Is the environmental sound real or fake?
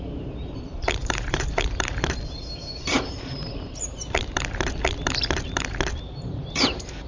fake